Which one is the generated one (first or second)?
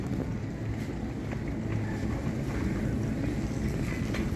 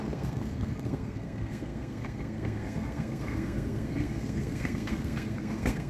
second